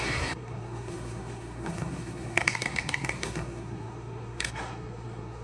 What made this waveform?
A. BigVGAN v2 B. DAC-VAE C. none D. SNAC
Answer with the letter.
D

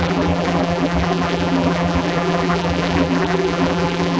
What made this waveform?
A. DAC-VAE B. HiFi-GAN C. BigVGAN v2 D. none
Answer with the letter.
C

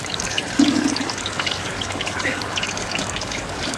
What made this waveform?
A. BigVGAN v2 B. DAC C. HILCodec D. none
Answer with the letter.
B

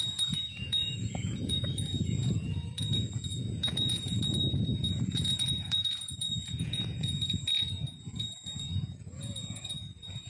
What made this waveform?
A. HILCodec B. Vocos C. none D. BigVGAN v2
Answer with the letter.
B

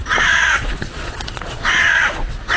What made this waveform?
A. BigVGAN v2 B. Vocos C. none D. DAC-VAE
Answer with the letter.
B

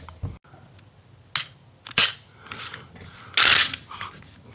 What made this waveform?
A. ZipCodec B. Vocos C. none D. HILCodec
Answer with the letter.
C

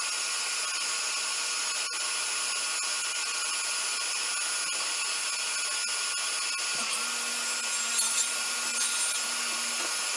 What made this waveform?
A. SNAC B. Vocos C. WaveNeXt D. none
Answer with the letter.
D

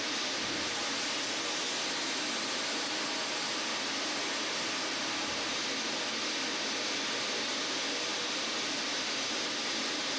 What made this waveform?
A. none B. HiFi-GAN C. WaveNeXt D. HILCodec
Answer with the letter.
A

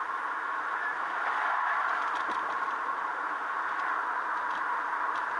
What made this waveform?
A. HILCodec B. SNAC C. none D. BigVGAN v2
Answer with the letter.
D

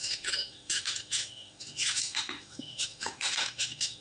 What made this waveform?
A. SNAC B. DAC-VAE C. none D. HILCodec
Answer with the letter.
B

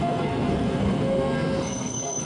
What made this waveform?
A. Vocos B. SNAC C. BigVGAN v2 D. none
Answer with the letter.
B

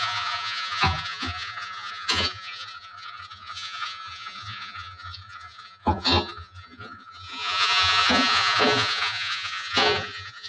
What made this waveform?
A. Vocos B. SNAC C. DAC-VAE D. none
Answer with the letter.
A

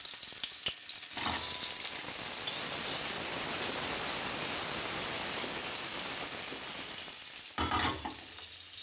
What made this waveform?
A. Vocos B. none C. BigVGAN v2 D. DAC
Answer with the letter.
B